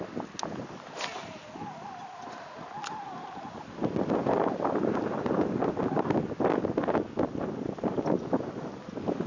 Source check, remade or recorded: recorded